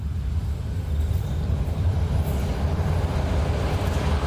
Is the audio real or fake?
real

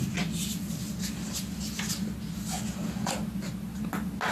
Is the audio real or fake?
real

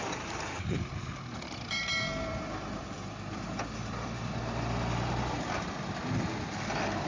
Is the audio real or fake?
fake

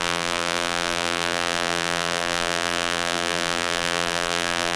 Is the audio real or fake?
fake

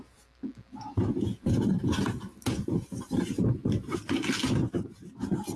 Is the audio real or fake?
fake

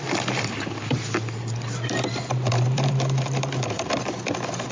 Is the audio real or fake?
fake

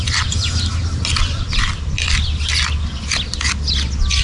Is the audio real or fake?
real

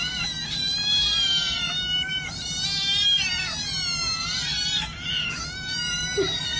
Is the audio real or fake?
fake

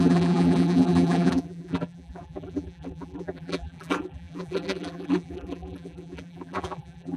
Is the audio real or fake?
fake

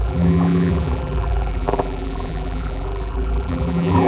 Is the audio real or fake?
fake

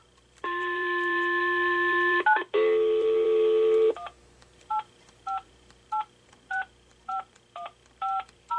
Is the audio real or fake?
fake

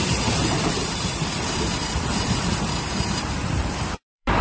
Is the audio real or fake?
fake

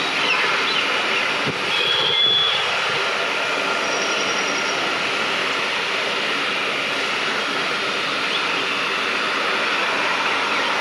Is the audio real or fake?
real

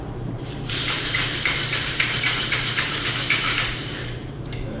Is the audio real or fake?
fake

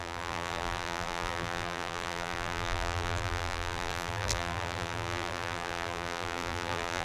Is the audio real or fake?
fake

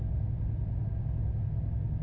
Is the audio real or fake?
real